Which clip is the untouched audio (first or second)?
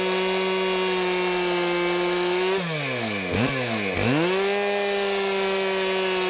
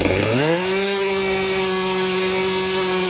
first